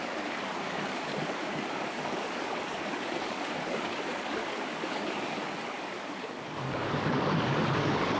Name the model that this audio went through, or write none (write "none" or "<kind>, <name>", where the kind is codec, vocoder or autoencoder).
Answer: codec, DAC